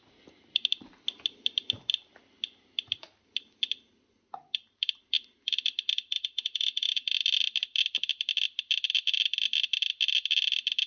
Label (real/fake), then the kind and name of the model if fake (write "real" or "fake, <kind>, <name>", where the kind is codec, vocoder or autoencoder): real